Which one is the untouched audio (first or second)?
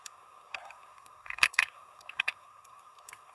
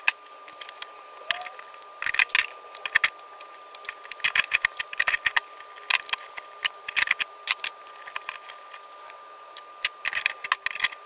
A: second